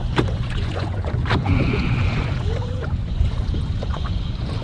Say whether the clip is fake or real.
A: fake